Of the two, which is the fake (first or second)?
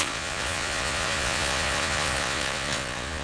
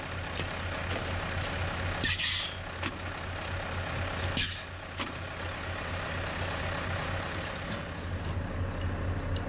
first